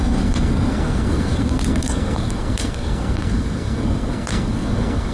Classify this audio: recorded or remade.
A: remade